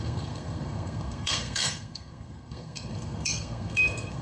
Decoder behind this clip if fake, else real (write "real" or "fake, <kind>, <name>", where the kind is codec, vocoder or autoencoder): fake, codec, SNAC